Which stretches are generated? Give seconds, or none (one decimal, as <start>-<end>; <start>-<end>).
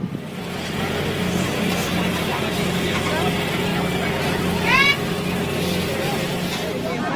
0.0-3.7; 6.5-7.2